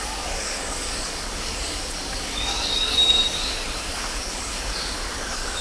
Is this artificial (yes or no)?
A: yes